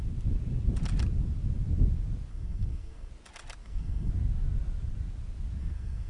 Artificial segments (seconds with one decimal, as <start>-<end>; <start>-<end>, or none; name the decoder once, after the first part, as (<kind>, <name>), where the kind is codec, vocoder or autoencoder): 2.3-3.1 (codec, SNAC); 3.6-4.1; 5.6-6.1